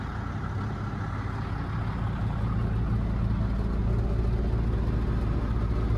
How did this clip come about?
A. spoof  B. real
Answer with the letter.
B